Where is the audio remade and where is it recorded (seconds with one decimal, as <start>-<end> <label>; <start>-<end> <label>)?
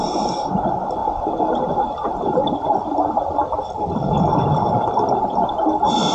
0.0-1.0 recorded; 1.0-4.7 remade; 4.7-6.1 recorded